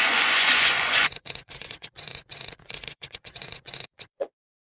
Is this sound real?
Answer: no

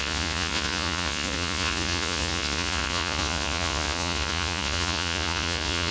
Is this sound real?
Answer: no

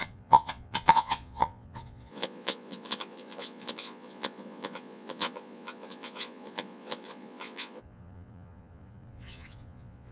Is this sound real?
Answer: no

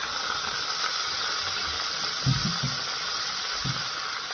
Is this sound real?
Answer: yes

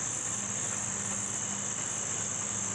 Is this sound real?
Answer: yes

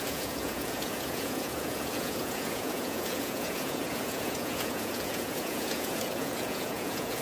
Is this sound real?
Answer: no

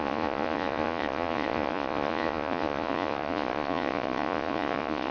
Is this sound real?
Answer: no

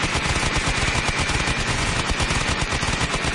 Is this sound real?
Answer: no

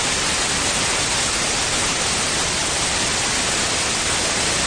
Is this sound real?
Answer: yes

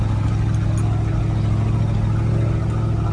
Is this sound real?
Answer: yes